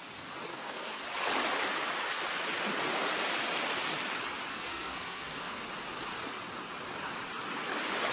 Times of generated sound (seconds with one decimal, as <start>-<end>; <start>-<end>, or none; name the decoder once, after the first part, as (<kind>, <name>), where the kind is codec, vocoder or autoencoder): 0.5-1.0 (codec, SNAC); 4.5-5.6